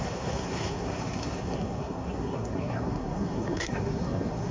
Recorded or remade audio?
remade